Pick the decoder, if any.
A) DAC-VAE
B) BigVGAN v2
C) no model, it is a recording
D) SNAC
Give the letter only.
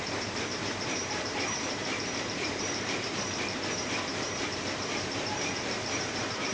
B